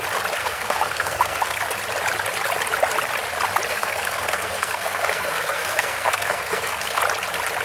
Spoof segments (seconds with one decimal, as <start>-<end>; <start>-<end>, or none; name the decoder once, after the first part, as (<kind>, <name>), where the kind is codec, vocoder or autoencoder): 0.4-1.6 (codec, SNAC); 3.7-7.0